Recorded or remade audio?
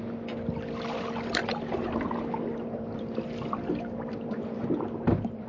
recorded